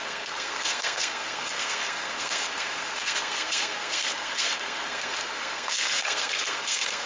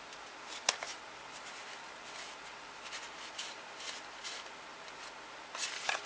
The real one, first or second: second